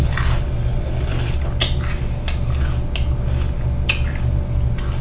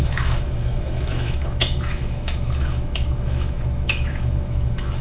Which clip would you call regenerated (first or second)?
second